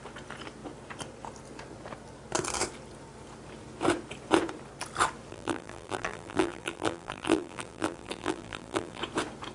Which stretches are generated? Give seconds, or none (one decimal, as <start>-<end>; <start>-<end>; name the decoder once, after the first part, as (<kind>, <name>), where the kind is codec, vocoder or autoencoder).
5.3-9.0 (vocoder, BigVGAN v2)